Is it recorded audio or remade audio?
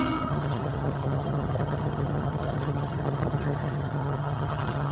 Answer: remade